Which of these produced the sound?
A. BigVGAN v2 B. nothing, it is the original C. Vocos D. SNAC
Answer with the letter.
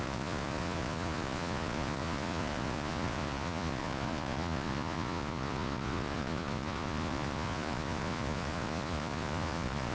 C